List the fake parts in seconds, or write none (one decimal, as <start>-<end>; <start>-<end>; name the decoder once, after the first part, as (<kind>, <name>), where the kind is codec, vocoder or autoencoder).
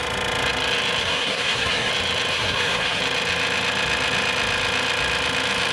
1.0-1.9 (codec, SNAC); 2.3-3.0